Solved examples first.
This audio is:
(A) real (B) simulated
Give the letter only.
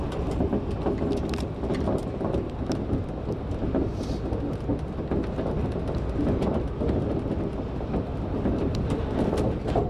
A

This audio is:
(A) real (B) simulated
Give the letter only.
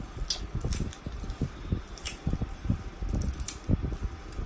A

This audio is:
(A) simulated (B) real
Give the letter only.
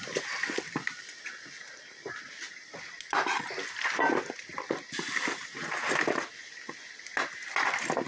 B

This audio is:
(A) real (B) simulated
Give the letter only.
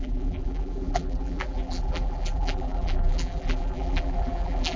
B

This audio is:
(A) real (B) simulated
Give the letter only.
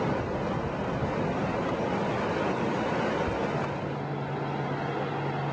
A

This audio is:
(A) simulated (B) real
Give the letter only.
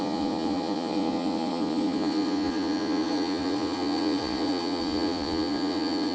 A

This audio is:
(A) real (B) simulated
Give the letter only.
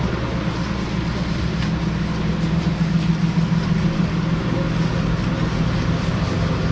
A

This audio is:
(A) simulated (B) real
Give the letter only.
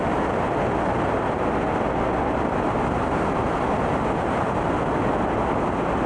B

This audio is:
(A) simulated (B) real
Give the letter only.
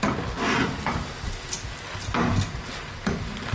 B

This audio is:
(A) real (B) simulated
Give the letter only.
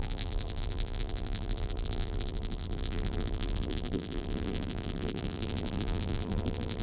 B